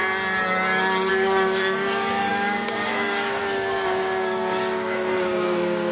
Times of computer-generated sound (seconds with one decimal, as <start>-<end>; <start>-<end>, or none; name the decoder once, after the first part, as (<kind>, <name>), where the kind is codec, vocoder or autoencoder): 1.1-5.9 (codec, DAC)